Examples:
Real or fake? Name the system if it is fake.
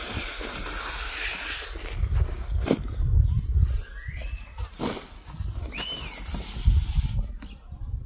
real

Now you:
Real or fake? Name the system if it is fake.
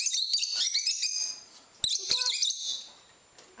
real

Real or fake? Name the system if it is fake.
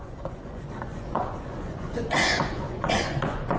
fake, vocoder, Vocos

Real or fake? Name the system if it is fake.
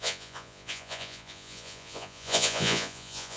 fake, vocoder, Vocos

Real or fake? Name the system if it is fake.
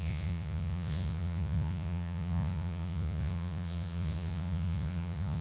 fake, vocoder, Vocos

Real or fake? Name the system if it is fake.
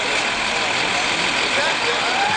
real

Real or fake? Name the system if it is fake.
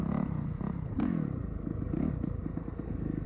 real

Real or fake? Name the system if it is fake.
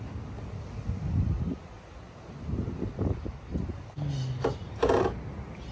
real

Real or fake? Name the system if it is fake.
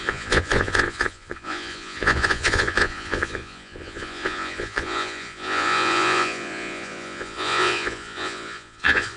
fake, vocoder, Vocos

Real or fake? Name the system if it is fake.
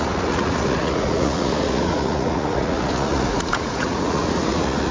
fake, vocoder, Vocos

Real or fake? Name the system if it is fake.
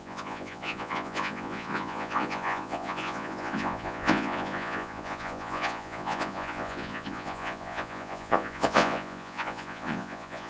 fake, vocoder, Vocos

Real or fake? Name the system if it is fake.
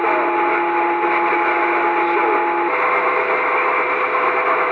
real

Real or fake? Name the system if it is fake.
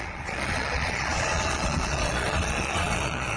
fake, vocoder, Vocos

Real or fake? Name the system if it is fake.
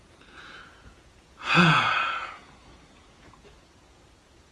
fake, vocoder, Vocos